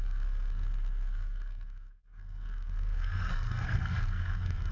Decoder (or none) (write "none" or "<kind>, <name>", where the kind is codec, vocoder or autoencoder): codec, SNAC